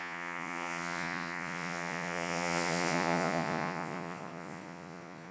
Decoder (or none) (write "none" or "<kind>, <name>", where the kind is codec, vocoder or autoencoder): vocoder, Vocos